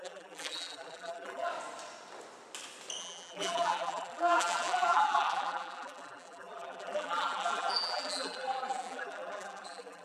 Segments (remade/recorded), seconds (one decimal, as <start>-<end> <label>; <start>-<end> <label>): 0.0-1.5 remade; 1.5-3.0 recorded; 3.0-10.0 remade